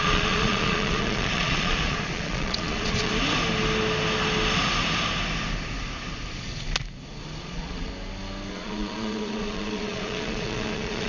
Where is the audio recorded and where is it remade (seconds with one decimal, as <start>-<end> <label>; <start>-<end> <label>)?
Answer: 0.0-3.1 remade; 3.1-7.4 recorded; 7.4-7.9 remade; 7.9-8.5 recorded; 8.5-11.1 remade